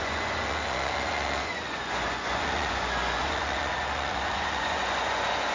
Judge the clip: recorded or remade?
remade